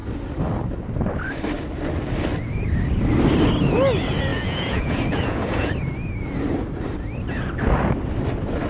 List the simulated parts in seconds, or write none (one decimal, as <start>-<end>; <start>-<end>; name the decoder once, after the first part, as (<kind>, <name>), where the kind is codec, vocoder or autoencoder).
4.3-5.7 (vocoder, Vocos)